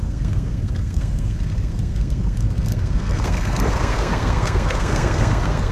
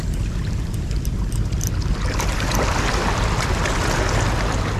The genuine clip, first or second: second